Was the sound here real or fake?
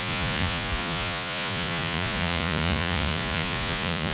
fake